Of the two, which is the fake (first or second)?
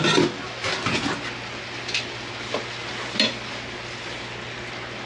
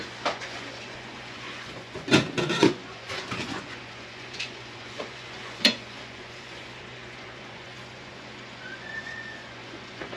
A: second